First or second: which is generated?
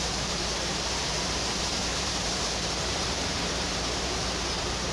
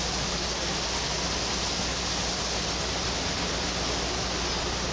first